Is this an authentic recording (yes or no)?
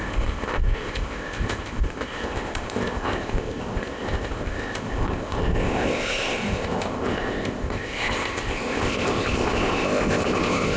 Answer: no